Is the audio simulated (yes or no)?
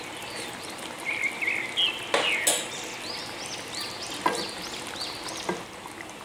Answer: no